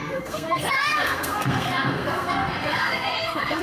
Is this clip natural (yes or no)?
no